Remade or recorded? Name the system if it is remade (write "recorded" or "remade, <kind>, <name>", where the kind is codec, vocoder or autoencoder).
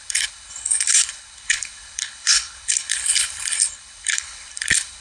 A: remade, codec, HILCodec